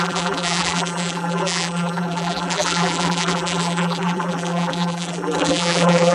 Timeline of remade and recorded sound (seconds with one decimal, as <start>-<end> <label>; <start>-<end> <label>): 0.0-6.1 remade